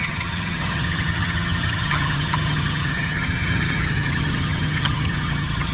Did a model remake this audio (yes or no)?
yes